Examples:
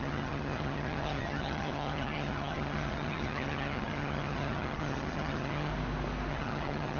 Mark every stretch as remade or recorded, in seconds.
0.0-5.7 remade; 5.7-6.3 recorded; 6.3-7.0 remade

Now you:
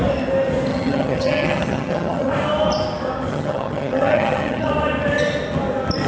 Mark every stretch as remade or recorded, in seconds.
0.0-0.7 recorded; 0.7-2.3 remade; 2.3-3.3 recorded; 3.3-4.7 remade; 4.7-6.1 recorded

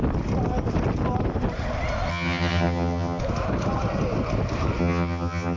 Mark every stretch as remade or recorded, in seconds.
0.0-2.1 recorded; 2.1-3.2 remade; 3.2-4.8 recorded; 4.8-5.6 remade

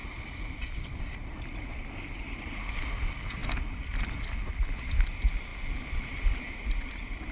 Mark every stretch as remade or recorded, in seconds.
0.0-7.3 recorded

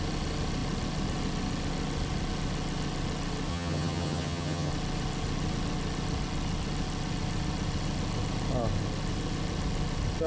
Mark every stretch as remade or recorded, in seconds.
0.0-3.5 recorded; 3.5-4.7 remade; 4.7-10.3 recorded

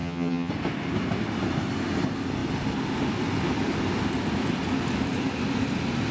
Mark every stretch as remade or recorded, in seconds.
0.0-0.5 remade; 0.5-6.1 recorded

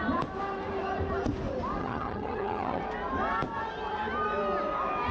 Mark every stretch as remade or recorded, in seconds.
0.0-1.8 recorded; 1.8-2.8 remade; 2.8-5.1 recorded